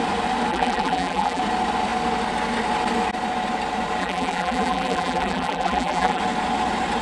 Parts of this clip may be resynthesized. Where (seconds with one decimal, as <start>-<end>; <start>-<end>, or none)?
0.5-1.4; 4.0-6.2